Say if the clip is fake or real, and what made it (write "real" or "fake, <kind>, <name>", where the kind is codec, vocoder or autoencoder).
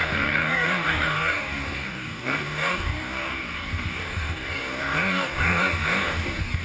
fake, codec, DAC